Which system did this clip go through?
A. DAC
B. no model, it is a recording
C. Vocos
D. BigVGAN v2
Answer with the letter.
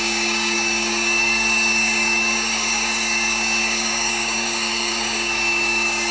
A